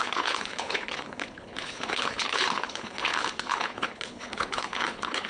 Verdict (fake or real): fake